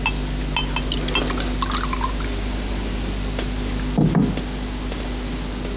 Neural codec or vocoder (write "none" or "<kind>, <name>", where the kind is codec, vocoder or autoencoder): none